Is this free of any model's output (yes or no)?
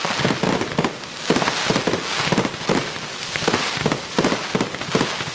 yes